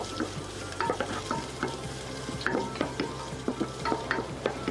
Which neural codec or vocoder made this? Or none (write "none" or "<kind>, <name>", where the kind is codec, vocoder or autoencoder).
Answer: vocoder, BigVGAN v2